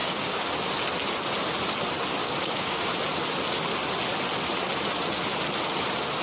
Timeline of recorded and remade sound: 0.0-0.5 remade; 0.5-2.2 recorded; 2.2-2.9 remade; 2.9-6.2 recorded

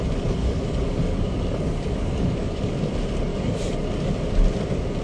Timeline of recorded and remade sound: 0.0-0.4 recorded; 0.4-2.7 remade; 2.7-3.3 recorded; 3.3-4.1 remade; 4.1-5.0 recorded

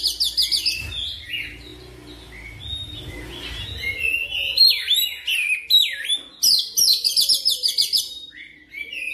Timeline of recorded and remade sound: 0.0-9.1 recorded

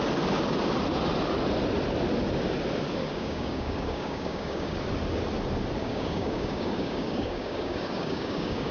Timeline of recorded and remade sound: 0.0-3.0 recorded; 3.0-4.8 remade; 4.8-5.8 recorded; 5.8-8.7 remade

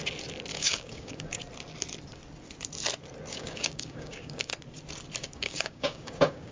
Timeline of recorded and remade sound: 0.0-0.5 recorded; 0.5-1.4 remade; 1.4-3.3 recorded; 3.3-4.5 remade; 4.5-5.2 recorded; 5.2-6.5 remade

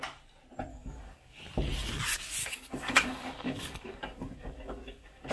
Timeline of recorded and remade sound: 0.0-0.7 recorded; 0.7-1.4 remade; 1.4-2.4 recorded; 2.4-5.3 remade

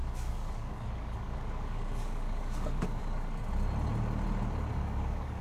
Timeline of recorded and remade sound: 0.0-3.4 remade; 3.4-4.7 recorded; 4.7-5.4 remade

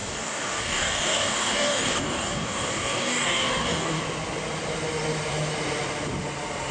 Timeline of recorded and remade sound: 0.0-4.0 remade; 4.0-6.7 recorded